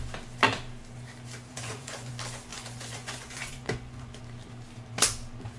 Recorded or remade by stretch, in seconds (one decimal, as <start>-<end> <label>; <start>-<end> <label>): 0.0-1.5 recorded; 1.5-2.1 remade; 2.1-2.5 recorded; 2.5-4.2 remade; 4.2-5.6 recorded